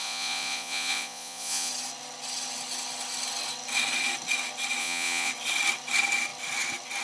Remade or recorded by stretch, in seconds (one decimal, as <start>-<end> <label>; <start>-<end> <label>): 0.0-1.7 remade; 1.7-4.8 recorded; 4.8-5.3 remade; 5.3-7.0 recorded

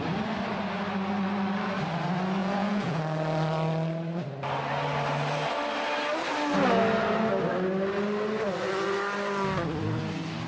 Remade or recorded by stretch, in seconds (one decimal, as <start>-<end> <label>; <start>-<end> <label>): 0.0-2.4 recorded; 2.4-3.0 remade; 3.0-10.5 recorded

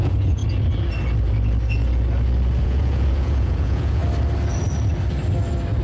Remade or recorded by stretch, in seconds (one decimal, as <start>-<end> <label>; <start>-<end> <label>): 0.0-0.4 remade; 0.4-2.6 recorded; 2.6-4.0 remade; 4.0-5.8 recorded

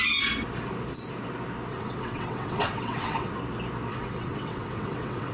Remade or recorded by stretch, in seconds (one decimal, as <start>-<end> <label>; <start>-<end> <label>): 0.0-1.7 recorded; 1.7-3.3 remade; 3.3-3.9 recorded; 3.9-5.3 remade

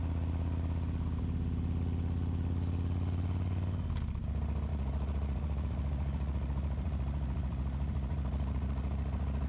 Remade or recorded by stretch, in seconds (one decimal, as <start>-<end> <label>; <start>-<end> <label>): 0.0-4.7 recorded; 4.7-9.5 remade

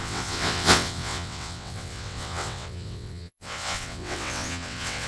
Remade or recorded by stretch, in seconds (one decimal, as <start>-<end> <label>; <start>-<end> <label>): 0.0-5.1 remade

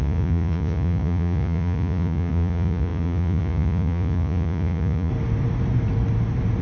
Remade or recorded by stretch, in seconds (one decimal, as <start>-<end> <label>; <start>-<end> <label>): 0.0-5.1 remade; 5.1-6.6 recorded

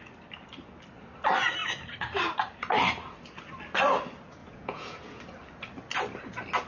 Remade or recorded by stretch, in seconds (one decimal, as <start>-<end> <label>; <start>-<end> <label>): 0.0-4.4 recorded; 4.4-5.2 remade; 5.2-6.7 recorded